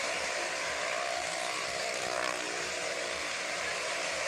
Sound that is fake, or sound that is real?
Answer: fake